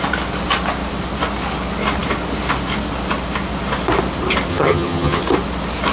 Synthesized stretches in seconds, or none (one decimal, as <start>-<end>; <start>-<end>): 4.5-5.2